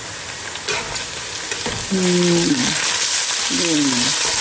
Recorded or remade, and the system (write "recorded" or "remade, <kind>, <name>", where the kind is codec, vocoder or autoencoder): recorded